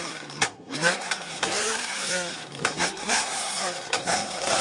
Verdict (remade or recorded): remade